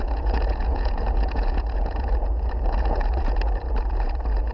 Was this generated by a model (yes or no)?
yes